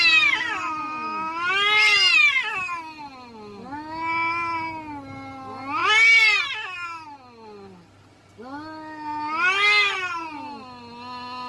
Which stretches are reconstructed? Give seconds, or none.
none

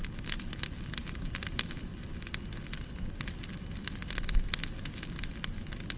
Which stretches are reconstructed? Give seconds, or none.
none

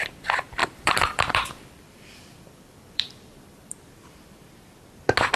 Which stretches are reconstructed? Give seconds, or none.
0.6-3.8 (vocoder, BigVGAN v2)

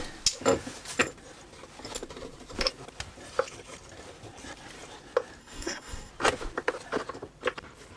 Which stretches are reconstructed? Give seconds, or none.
5.4-6.1 (codec, SNAC)